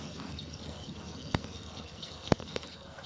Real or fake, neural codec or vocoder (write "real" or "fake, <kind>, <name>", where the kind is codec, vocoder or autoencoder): fake, codec, SNAC